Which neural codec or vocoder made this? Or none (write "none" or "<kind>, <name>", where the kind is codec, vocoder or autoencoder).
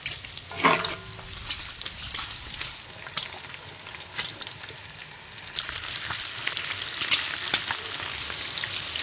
none